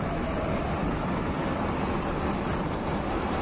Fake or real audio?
real